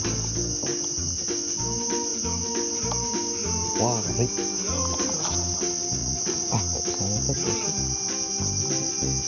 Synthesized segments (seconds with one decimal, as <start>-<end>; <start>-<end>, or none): 6.0-6.6